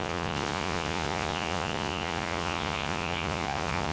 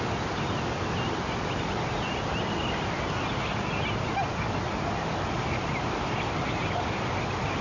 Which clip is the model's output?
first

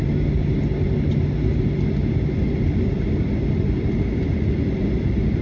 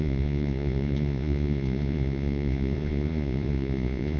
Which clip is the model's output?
second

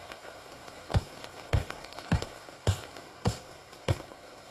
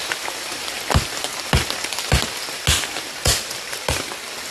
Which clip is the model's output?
first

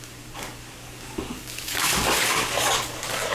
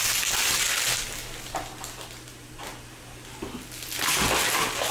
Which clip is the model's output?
first